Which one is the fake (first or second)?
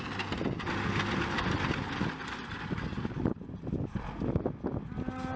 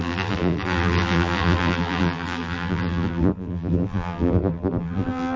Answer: second